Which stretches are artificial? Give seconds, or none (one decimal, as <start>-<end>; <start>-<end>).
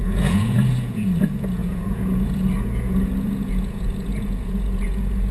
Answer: 0.0-5.3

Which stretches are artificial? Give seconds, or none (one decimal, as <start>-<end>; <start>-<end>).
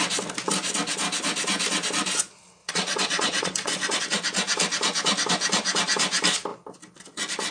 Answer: 2.6-4.0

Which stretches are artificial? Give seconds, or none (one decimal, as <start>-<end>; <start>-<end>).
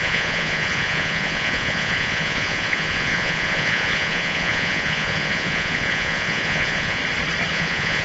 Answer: 0.0-7.0; 7.5-8.0